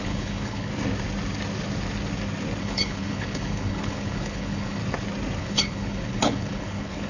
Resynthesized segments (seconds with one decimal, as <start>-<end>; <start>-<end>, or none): 0.0-0.7; 2.6-4.8; 5.4-7.1